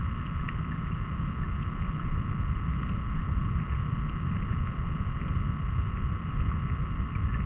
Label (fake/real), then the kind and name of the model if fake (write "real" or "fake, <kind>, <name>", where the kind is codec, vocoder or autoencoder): real